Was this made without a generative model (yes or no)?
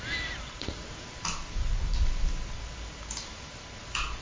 yes